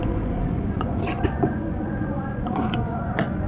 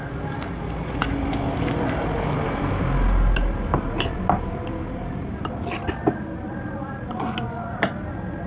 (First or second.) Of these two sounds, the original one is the second